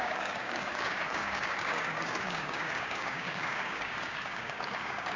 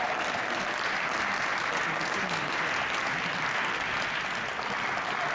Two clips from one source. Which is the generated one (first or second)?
first